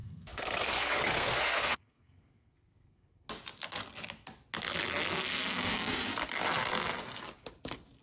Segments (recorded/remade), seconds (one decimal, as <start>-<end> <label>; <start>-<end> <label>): 0.0-3.3 remade; 3.3-8.0 recorded